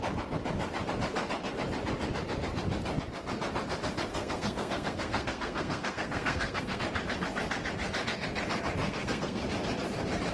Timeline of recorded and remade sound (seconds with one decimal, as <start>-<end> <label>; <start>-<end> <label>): 0.0-4.1 recorded; 4.1-6.8 remade; 6.8-8.8 recorded; 8.8-9.4 remade; 9.4-10.3 recorded

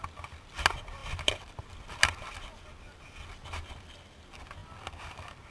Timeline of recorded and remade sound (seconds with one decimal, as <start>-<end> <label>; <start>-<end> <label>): 0.0-5.5 recorded

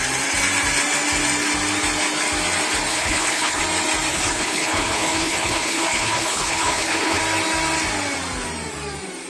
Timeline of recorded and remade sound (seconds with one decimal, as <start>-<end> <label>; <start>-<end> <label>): 0.0-2.9 recorded; 2.9-3.6 remade; 3.6-4.1 recorded; 4.1-7.2 remade; 7.2-9.3 recorded